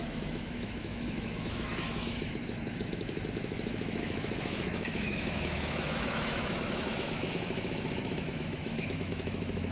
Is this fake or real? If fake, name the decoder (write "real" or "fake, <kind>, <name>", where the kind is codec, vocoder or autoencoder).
fake, autoencoder, DAC-VAE